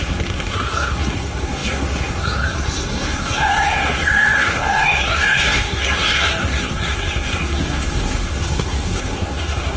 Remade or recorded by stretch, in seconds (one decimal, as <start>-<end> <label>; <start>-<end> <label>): 0.0-9.8 remade

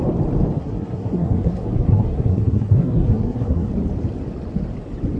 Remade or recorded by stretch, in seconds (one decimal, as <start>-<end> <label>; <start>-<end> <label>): 0.0-0.6 recorded; 0.6-3.7 remade; 3.7-5.2 recorded

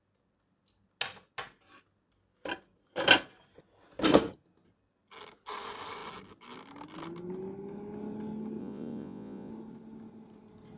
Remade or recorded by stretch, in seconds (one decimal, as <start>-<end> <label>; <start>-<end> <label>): 0.0-8.6 recorded; 8.6-9.5 remade; 9.5-10.8 recorded

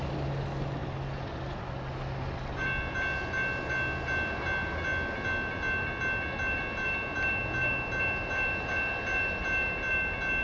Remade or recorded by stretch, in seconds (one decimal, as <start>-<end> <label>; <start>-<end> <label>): 0.0-10.4 recorded

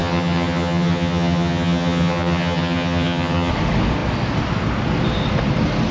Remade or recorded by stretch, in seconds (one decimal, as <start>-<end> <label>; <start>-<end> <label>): 0.0-3.5 remade; 3.5-5.9 recorded

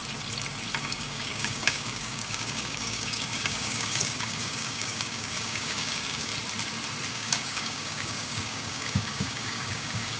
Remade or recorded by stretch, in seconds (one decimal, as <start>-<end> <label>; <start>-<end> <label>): 0.0-0.8 recorded; 0.8-6.3 remade; 6.3-7.1 recorded; 7.1-10.2 remade

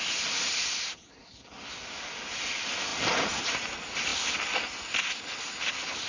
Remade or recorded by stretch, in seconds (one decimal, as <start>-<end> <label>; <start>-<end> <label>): 0.0-6.1 recorded

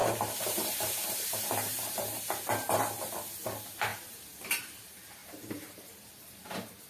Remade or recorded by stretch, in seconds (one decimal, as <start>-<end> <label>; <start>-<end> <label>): 0.0-2.2 remade; 2.2-3.9 recorded; 3.9-4.6 remade; 4.6-5.2 recorded; 5.2-6.9 remade